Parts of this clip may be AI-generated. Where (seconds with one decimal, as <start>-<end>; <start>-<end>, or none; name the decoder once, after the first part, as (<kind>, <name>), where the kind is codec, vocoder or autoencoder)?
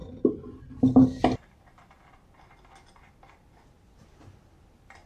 none